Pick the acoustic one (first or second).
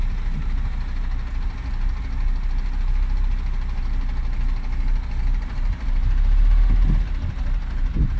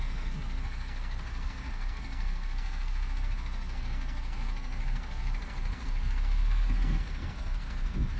first